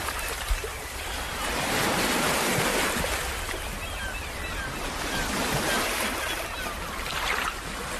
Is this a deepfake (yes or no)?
no